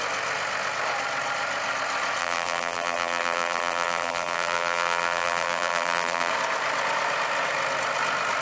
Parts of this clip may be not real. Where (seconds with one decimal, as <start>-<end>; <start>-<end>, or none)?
2.2-6.3